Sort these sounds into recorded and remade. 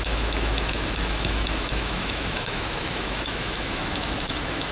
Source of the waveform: remade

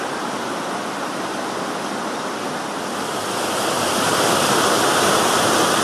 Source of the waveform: recorded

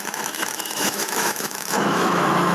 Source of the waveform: remade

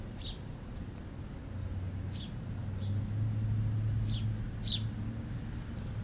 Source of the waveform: recorded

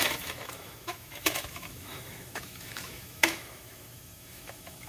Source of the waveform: remade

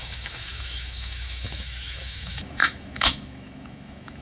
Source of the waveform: remade